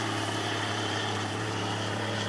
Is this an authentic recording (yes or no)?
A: no